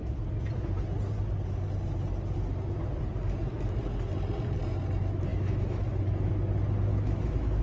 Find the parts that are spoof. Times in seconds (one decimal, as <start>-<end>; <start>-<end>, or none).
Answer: 5.3-6.3; 6.9-7.6